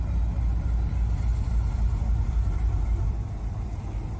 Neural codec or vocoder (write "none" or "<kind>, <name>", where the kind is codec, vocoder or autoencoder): none